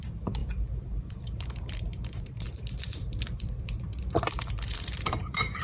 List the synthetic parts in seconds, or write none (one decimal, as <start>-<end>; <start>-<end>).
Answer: 0.0-5.6